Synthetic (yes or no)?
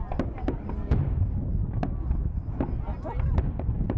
no